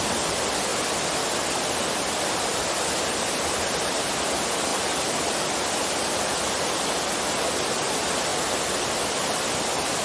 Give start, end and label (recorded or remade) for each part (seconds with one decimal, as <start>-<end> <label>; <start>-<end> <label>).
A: 0.0-10.0 recorded